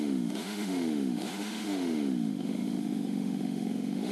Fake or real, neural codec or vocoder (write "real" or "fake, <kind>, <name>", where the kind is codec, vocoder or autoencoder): fake, autoencoder, DAC-VAE